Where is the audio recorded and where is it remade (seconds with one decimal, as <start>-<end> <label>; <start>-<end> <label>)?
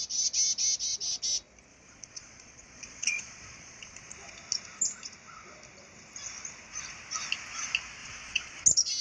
0.0-1.7 recorded; 1.7-4.3 remade; 4.3-8.0 recorded; 8.0-8.6 remade; 8.6-9.0 recorded